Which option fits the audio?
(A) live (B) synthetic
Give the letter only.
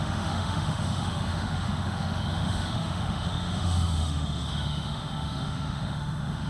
B